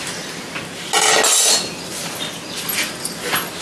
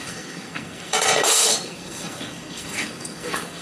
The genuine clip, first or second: first